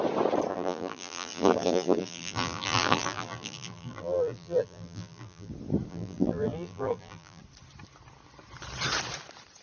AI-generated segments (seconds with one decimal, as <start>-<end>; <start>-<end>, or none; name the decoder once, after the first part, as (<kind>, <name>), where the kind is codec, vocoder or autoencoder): 0.5-5.5 (vocoder, BigVGAN v2); 5.9-7.4